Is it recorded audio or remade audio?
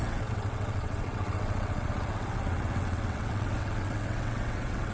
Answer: remade